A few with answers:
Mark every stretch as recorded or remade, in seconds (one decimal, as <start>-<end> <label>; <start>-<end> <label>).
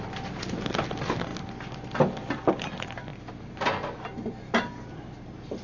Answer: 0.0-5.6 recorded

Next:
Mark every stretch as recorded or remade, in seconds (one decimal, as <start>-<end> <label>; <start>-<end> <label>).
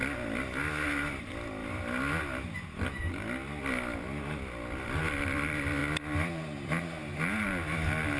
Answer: 0.0-8.2 recorded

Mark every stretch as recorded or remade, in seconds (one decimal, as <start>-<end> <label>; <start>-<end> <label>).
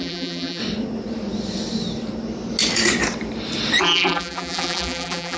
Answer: 0.0-0.6 remade; 0.6-3.8 recorded; 3.8-5.4 remade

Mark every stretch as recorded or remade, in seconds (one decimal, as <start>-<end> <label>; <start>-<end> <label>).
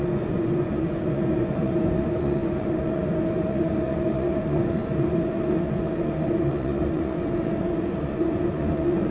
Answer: 0.0-9.1 remade